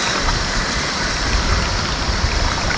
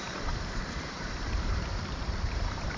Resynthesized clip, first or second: second